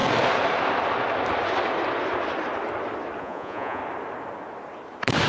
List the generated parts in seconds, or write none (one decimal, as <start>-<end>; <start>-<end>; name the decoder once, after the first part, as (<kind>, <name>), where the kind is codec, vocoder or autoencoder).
3.2-3.8 (vocoder, Vocos)